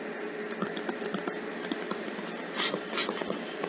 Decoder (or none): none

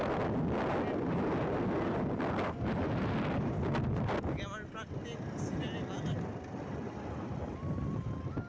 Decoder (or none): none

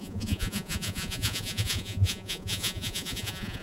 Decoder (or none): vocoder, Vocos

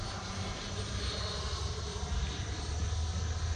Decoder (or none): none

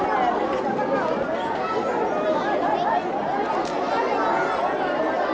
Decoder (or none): none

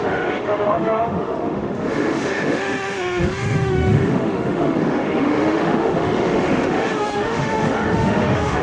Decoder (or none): autoencoder, DAC-VAE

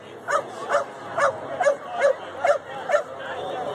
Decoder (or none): none